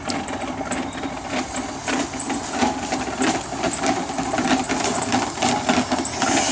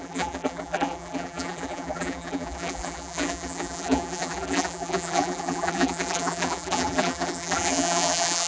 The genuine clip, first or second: first